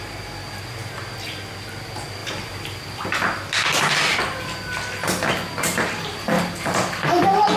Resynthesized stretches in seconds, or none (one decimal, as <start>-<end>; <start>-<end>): none